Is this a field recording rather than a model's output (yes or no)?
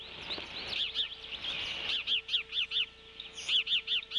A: yes